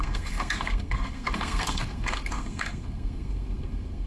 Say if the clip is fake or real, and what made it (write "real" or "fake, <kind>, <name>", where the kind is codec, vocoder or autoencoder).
fake, codec, SNAC